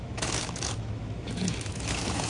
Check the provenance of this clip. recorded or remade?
remade